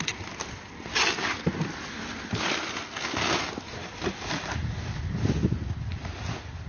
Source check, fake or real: real